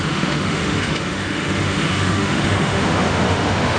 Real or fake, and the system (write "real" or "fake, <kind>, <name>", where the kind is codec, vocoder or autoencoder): fake, autoencoder, DAC-VAE